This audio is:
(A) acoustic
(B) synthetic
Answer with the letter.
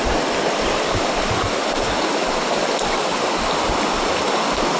A